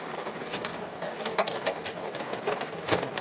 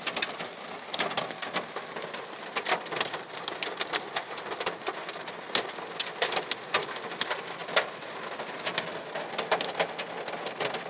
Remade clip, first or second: first